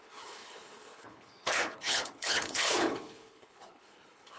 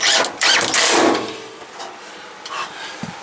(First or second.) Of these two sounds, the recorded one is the second